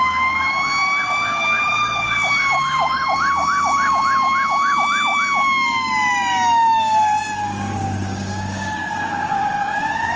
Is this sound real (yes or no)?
no